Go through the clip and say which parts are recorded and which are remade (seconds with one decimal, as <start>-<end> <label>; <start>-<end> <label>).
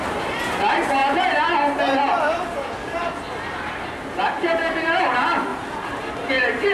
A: 0.0-6.7 recorded